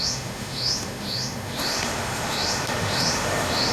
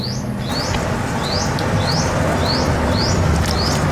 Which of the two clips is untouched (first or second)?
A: second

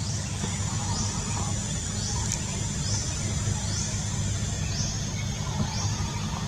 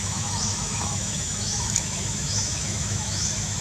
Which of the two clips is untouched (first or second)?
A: first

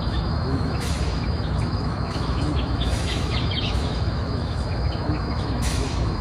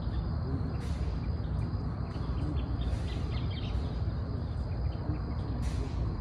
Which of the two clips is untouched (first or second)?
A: second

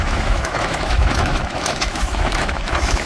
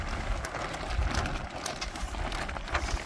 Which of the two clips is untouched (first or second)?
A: second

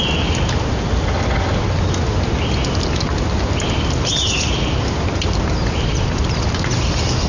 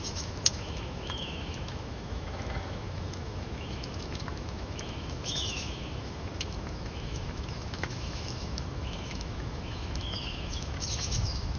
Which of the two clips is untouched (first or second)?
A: first